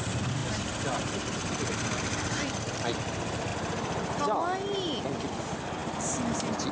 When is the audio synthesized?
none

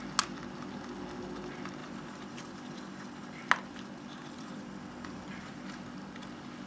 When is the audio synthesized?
1.8-3.4 (vocoder, BigVGAN v2); 4.2-5.8

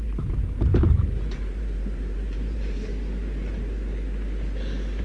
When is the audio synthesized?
0.0-2.9 (vocoder, BigVGAN v2)

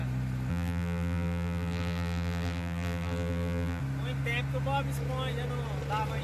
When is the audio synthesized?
0.5-3.8 (vocoder, BigVGAN v2)

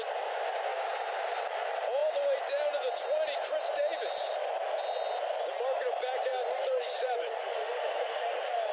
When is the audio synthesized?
0.7-1.3 (vocoder, BigVGAN v2); 6.3-7.3